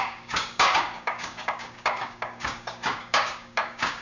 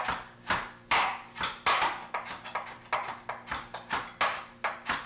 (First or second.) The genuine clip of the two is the second